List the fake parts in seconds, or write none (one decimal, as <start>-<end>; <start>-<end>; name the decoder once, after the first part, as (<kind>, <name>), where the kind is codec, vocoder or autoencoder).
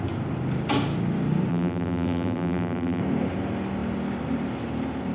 1.5-3.0 (vocoder, BigVGAN v2)